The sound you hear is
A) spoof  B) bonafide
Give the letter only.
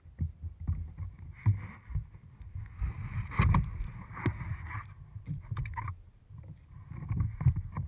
B